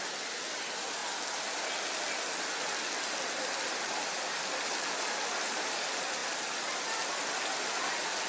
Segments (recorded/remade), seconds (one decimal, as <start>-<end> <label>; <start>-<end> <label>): 0.0-8.3 recorded